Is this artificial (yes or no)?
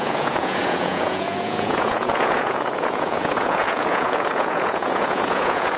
yes